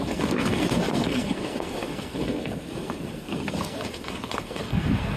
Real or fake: fake